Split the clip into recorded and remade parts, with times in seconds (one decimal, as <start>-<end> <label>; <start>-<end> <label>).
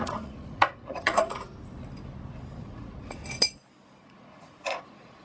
0.0-1.5 remade; 1.5-2.6 recorded; 2.6-3.2 remade; 3.2-4.0 recorded; 4.0-5.2 remade